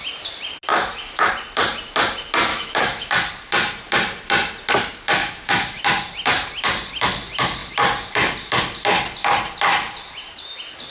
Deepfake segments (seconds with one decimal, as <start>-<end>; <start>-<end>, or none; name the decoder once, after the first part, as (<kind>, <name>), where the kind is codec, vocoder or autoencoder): 0.7-1.3 (autoencoder, DAC-VAE); 2.5-3.1; 5.2-5.8